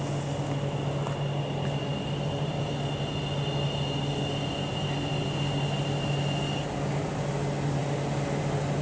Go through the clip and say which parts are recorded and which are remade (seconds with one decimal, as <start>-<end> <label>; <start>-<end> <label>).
0.0-8.8 recorded